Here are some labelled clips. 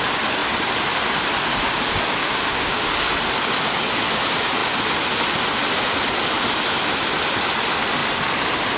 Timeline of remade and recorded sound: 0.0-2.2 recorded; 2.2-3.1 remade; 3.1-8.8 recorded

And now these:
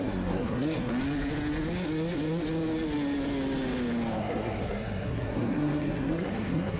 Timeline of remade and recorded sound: 0.0-0.9 remade; 0.9-4.2 recorded; 4.2-6.8 remade

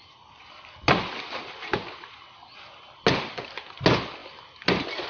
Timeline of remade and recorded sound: 0.0-4.2 recorded; 4.2-5.1 remade

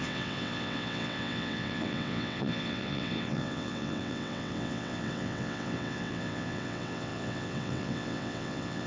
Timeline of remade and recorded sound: 0.0-8.9 remade

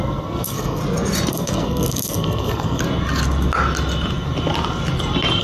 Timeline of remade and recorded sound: 0.0-0.8 remade; 0.8-1.3 recorded; 1.3-2.8 remade; 2.8-5.4 recorded

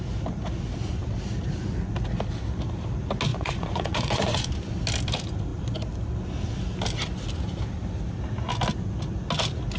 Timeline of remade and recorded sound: 0.0-3.3 recorded; 3.3-4.5 remade; 4.5-9.8 recorded